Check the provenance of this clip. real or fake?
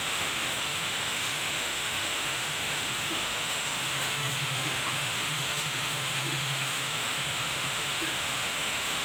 fake